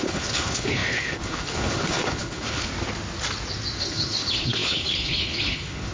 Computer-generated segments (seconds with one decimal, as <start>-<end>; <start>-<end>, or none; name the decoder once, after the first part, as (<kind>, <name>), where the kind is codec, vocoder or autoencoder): 0.0-2.7 (codec, HILCodec); 3.8-5.9